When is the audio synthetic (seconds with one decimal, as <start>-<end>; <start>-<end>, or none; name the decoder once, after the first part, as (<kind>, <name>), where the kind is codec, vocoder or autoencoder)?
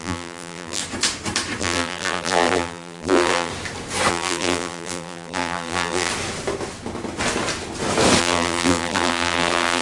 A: 0.0-0.8 (vocoder, BigVGAN v2); 1.6-3.5; 4.1-6.1; 8.2-9.8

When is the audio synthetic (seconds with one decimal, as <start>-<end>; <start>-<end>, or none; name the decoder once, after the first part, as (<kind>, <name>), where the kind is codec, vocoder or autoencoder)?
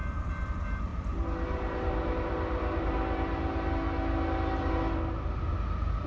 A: none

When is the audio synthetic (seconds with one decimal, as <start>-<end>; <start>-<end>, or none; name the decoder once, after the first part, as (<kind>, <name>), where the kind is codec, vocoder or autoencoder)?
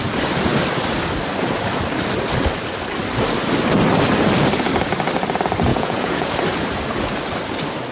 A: 5.7-6.3 (vocoder, Vocos)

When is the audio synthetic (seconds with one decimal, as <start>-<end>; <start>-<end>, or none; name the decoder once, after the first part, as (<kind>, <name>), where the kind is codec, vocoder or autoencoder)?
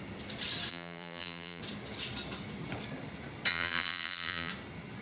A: 0.7-1.6 (vocoder, BigVGAN v2); 3.5-4.5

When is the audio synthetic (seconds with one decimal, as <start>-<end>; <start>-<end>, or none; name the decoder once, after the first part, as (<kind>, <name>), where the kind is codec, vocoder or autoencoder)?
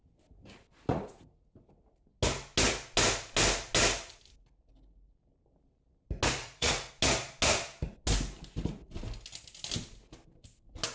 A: 0.9-1.8 (vocoder, Vocos); 6.4-6.9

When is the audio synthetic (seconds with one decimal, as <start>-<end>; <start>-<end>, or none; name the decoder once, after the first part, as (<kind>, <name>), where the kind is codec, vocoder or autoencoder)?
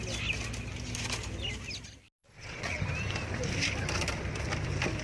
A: 2.2-2.8 (vocoder, Vocos)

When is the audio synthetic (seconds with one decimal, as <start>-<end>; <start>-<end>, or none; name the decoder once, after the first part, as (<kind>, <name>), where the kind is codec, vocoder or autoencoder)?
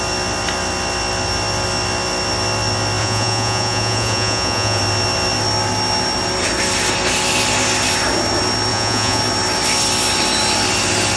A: 3.0-4.8 (vocoder, Vocos); 8.7-9.2